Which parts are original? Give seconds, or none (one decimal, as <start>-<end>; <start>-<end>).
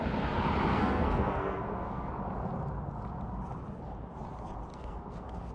0.0-0.7; 2.1-4.7